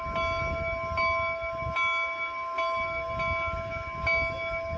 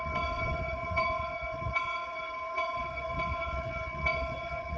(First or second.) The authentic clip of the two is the first